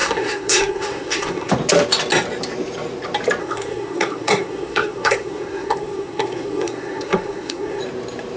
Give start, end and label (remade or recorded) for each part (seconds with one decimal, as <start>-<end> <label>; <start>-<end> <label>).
0.0-1.5 remade; 1.5-3.4 recorded; 3.4-7.8 remade; 7.8-8.4 recorded

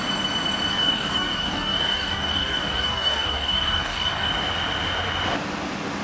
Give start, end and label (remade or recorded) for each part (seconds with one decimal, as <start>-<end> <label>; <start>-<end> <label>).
0.0-0.7 recorded; 0.7-4.3 remade; 4.3-6.0 recorded

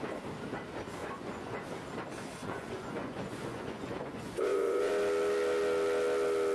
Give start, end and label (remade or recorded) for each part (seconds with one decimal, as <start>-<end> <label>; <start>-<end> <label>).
0.0-1.0 recorded; 1.0-1.6 remade; 1.6-2.4 recorded; 2.4-4.9 remade; 4.9-6.5 recorded

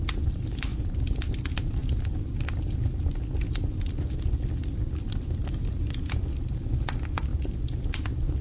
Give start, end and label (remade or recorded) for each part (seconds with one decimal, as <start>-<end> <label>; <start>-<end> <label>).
0.0-8.4 recorded

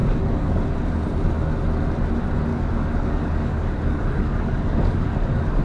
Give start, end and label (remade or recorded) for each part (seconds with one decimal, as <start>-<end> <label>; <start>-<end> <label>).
0.0-0.6 remade; 0.6-2.5 recorded; 2.5-5.6 remade

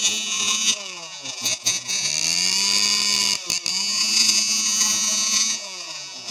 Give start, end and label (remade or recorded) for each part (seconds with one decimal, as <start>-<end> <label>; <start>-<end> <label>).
0.0-2.1 remade; 2.1-3.7 recorded; 3.7-6.3 remade

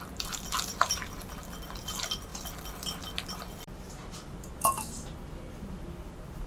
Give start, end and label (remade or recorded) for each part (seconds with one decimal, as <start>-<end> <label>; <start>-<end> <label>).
0.0-6.5 recorded